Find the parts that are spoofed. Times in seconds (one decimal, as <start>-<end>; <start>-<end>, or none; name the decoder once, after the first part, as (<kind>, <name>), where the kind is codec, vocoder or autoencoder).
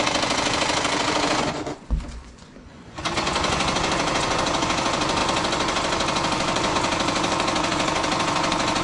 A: 0.0-8.8 (vocoder, Vocos)